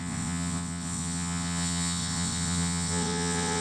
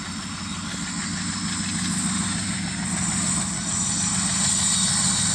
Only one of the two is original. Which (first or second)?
second